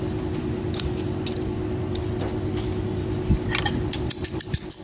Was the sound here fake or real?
real